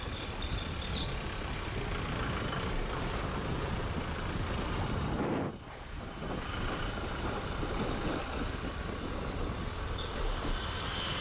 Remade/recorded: recorded